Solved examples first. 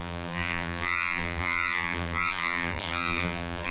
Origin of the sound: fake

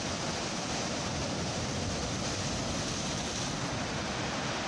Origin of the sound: real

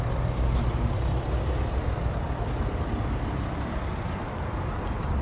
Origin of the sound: real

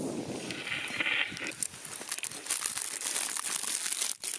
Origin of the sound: real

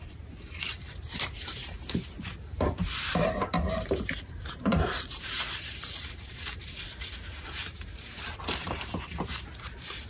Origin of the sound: fake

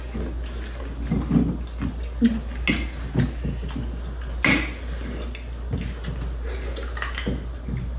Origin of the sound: real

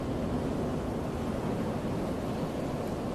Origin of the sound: real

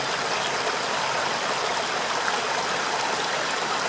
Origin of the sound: real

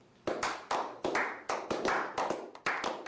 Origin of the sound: real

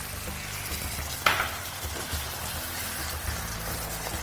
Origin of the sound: real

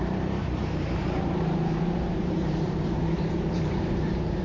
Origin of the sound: fake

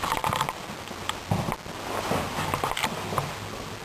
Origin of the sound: real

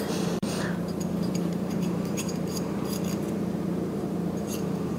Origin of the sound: fake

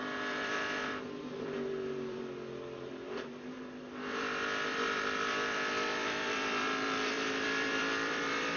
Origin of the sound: fake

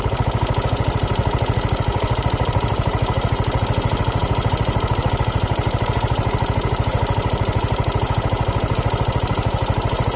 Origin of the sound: fake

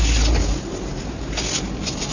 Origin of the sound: real